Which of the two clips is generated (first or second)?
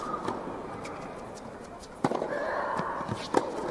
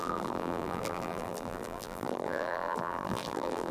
second